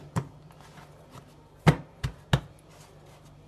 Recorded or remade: recorded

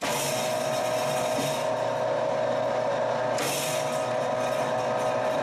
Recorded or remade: recorded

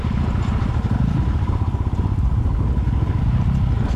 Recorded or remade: recorded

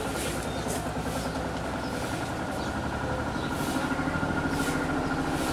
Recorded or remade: recorded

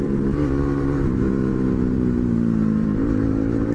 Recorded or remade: remade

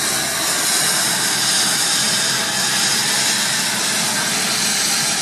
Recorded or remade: recorded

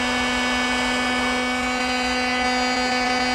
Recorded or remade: recorded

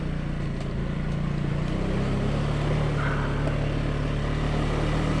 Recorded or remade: recorded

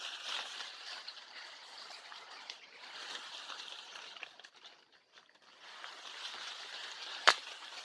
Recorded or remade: remade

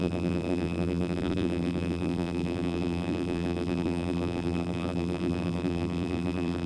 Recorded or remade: remade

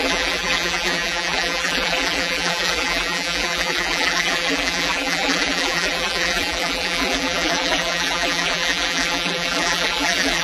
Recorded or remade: remade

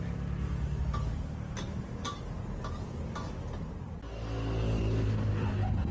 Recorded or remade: recorded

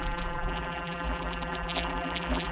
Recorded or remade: remade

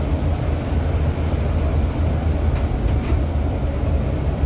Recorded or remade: remade